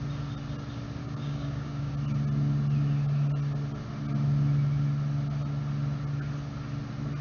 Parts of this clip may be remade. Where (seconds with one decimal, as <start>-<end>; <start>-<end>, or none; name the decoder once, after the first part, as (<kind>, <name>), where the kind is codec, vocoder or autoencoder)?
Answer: 1.0-1.9 (codec, DAC)